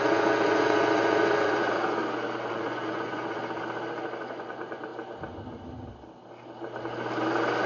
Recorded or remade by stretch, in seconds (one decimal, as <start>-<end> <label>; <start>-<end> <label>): 0.0-2.0 remade; 2.0-2.5 recorded; 2.5-3.4 remade; 3.4-4.2 recorded; 4.2-4.9 remade; 4.9-7.7 recorded